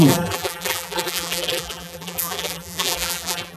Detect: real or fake fake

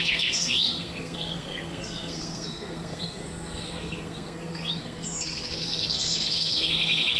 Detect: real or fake fake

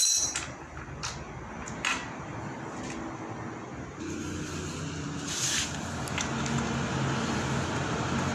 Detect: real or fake real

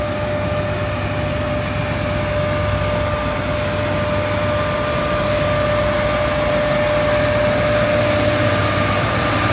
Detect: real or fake real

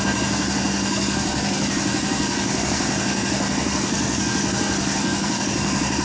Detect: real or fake fake